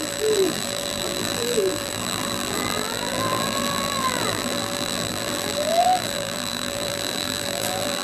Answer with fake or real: fake